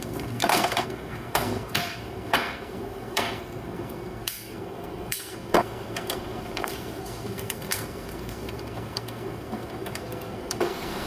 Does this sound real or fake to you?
fake